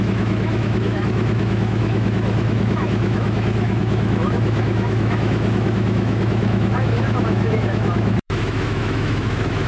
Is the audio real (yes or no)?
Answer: no